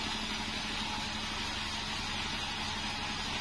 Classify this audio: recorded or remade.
recorded